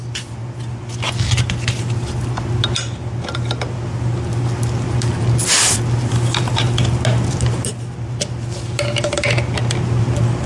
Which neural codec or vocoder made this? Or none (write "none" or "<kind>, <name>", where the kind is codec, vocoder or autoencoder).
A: none